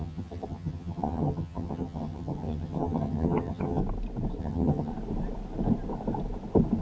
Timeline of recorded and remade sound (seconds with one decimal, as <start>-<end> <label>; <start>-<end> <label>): 0.0-3.8 remade; 3.8-4.4 recorded; 4.4-4.9 remade; 4.9-6.8 recorded